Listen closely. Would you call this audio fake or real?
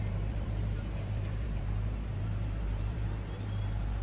fake